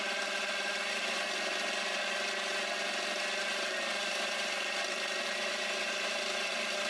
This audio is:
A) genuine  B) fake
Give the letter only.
A